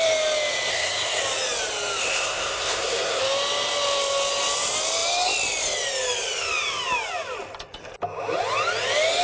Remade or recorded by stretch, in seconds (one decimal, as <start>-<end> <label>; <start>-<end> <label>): 0.0-0.7 recorded; 0.7-1.2 remade; 1.2-2.0 recorded; 2.0-3.2 remade; 3.2-9.2 recorded